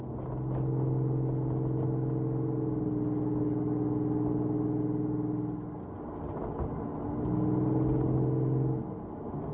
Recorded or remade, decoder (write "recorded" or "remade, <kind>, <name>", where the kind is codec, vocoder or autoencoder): recorded